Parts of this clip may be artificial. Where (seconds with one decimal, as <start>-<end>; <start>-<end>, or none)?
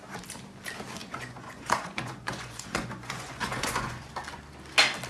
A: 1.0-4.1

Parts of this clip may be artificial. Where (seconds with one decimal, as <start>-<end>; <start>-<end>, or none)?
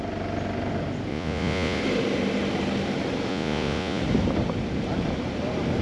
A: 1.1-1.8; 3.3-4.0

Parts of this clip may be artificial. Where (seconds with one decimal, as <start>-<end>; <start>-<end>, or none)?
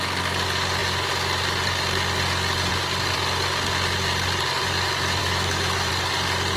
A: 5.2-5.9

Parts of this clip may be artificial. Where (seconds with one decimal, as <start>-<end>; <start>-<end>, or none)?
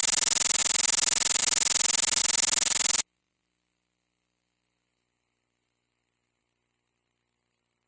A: none